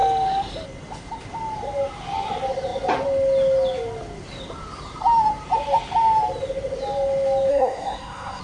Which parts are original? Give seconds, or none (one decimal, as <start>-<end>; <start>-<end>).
0.0-7.5